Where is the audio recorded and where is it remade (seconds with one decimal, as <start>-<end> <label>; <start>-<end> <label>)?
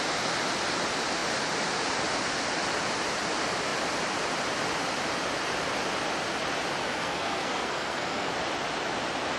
0.0-6.8 recorded; 6.8-8.3 remade; 8.3-9.4 recorded